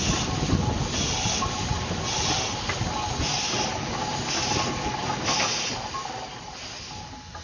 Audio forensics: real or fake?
real